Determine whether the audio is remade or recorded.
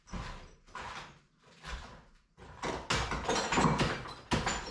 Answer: recorded